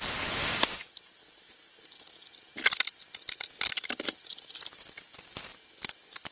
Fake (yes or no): no